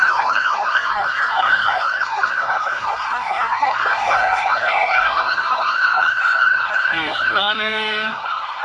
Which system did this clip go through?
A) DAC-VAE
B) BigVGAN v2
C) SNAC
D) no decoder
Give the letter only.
C